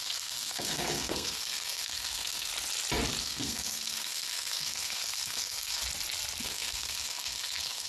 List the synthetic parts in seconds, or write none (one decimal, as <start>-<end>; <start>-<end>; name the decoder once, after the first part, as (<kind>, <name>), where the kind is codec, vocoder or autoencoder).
0.0-2.5 (codec, SNAC); 3.2-5.8; 6.4-7.9